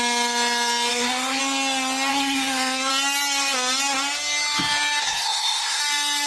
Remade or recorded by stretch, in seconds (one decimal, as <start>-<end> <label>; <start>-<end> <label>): 0.0-0.9 recorded; 0.9-1.4 remade; 1.4-2.1 recorded; 2.1-2.9 remade; 2.9-5.0 recorded; 5.0-5.8 remade; 5.8-6.3 recorded